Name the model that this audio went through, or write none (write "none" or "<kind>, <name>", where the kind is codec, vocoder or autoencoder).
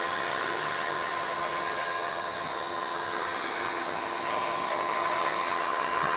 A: vocoder, HiFi-GAN